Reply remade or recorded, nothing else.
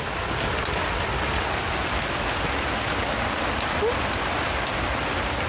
recorded